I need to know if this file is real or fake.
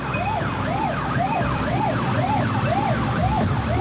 fake